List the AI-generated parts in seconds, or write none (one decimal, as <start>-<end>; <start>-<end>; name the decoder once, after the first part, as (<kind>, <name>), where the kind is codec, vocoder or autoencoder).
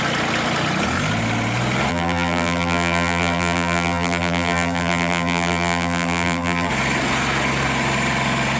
1.9-6.7 (vocoder, BigVGAN v2)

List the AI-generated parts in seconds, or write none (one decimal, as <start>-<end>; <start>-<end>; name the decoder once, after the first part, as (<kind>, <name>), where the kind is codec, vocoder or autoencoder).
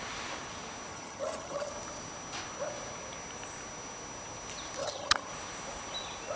0.9-1.7 (vocoder, HiFi-GAN); 4.8-5.3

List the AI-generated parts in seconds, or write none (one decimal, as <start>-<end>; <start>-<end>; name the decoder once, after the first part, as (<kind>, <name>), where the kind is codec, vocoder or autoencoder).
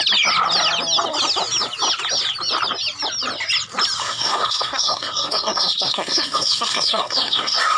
4.0-7.8 (codec, SNAC)